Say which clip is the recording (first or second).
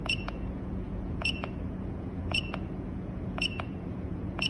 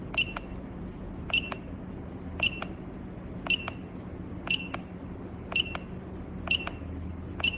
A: second